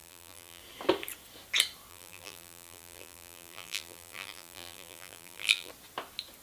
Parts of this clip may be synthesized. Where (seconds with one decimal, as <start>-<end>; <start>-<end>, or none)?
0.0-0.6; 1.9-5.7